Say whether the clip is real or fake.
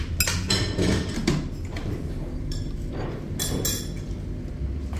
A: real